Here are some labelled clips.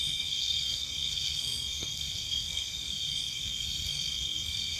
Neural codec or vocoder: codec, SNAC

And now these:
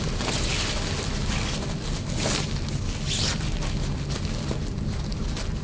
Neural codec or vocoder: none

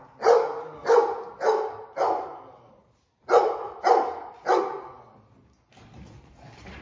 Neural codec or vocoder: none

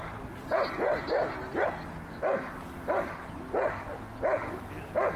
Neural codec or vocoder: none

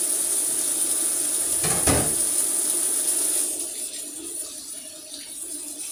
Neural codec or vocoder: none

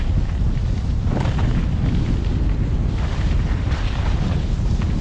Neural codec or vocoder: none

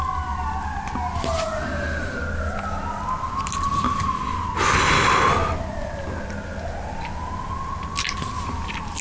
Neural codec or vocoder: none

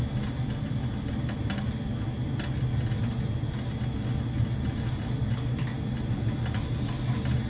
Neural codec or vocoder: none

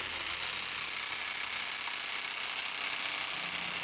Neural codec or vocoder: none